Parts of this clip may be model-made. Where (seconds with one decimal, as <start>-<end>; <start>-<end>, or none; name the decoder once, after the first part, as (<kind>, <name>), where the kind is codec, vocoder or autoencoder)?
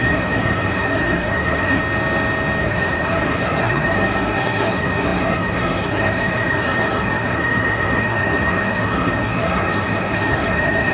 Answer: 0.0-1.8 (codec, SNAC); 2.6-10.9